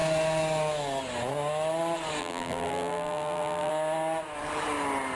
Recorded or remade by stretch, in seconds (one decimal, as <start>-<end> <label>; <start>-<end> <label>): 0.0-2.2 recorded; 2.2-3.7 remade; 3.7-5.1 recorded